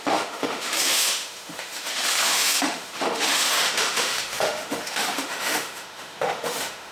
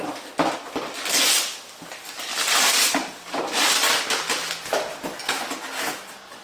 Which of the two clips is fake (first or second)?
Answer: first